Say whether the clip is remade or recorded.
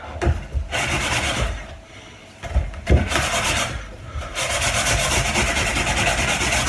recorded